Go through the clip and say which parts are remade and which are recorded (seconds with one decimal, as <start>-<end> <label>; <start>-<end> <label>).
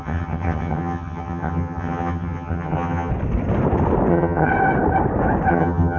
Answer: 0.0-3.1 remade; 3.1-4.1 recorded; 4.1-4.5 remade; 4.5-5.5 recorded; 5.5-6.0 remade